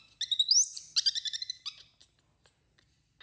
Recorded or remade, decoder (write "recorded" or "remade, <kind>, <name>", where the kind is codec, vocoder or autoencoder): recorded